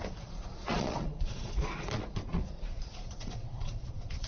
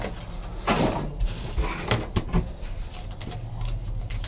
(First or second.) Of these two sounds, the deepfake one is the first